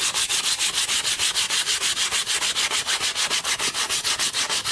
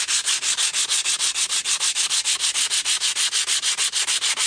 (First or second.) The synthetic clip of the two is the first